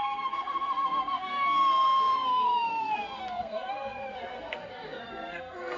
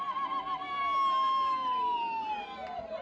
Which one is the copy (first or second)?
first